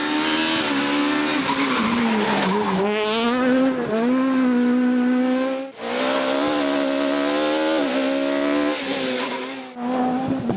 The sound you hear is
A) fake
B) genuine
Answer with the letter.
B